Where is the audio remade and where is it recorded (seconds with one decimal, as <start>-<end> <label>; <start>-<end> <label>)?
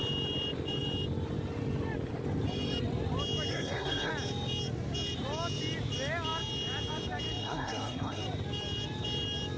0.0-3.5 recorded; 3.5-4.1 remade; 4.1-7.4 recorded; 7.4-8.2 remade; 8.2-9.6 recorded